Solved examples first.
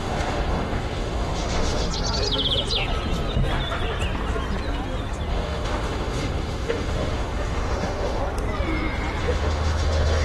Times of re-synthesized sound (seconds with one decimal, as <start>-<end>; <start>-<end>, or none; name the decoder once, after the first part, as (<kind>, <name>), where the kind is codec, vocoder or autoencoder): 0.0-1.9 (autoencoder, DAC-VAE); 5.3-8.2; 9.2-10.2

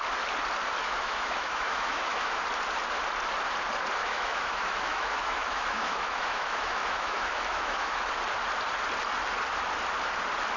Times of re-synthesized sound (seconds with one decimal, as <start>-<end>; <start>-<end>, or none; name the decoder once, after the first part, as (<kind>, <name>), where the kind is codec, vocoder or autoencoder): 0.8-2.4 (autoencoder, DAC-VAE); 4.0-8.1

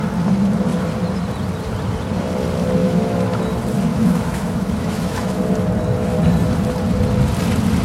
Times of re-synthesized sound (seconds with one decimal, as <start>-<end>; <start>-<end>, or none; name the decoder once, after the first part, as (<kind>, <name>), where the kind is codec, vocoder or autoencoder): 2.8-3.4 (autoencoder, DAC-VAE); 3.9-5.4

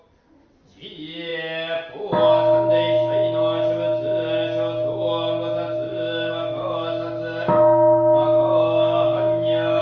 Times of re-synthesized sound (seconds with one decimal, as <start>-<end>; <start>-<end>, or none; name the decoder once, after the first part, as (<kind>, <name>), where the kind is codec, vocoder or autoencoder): 5.9-9.8 (autoencoder, DAC-VAE)

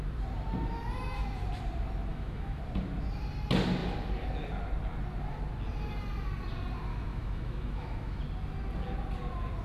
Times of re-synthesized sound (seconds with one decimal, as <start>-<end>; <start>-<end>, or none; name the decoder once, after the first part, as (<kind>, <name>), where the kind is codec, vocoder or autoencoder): 2.1-2.6 (autoencoder, DAC-VAE); 6.9-8.2